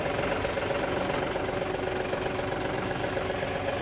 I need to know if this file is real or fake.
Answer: real